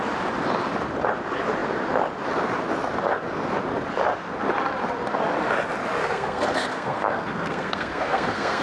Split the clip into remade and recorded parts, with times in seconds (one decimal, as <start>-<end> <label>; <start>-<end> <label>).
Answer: 0.0-6.0 recorded; 6.0-8.6 remade